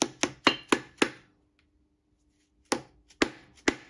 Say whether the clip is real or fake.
real